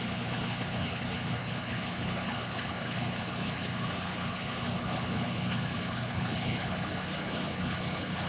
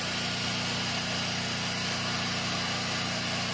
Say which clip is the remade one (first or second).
first